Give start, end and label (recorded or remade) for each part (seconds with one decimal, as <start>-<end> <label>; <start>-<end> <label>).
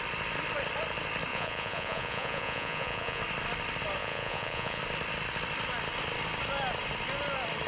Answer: 0.0-1.3 recorded; 1.3-3.2 remade; 3.2-4.0 recorded; 4.0-4.8 remade; 4.8-7.7 recorded